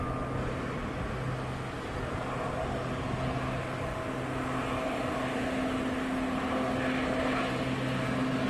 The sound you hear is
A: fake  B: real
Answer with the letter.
B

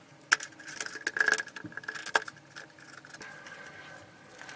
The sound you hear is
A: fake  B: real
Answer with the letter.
B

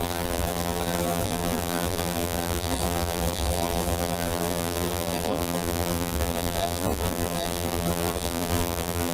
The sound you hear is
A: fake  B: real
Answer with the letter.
A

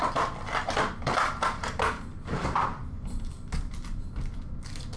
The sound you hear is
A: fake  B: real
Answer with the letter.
B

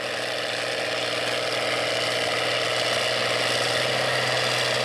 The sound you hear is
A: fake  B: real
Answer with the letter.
B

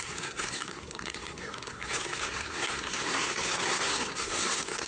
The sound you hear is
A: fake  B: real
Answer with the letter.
A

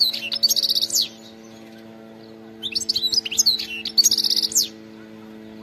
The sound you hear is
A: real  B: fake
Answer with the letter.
A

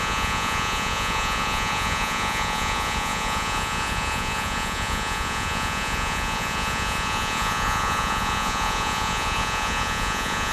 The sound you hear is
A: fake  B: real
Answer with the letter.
A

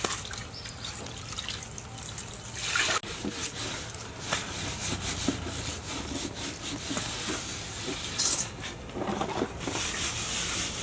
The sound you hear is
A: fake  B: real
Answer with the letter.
B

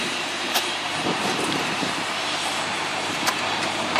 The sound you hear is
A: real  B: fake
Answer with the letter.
B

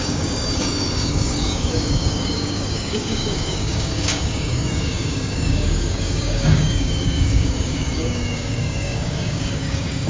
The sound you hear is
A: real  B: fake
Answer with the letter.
B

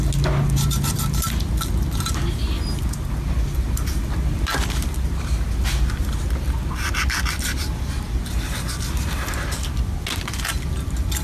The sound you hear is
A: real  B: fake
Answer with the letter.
A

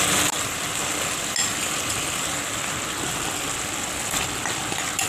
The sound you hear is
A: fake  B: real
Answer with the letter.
B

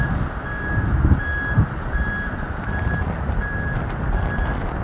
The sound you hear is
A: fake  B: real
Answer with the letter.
B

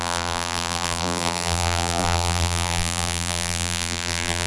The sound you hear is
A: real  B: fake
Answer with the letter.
B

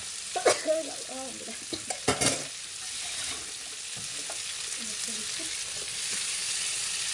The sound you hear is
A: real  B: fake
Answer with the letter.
A